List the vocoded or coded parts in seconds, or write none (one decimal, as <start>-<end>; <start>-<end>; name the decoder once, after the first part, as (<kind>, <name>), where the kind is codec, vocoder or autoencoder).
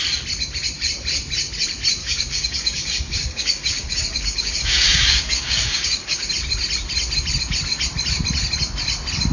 2.0-6.3 (codec, DAC)